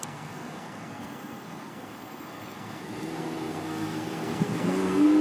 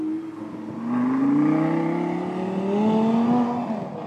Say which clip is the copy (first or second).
first